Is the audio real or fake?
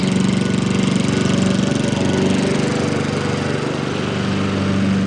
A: real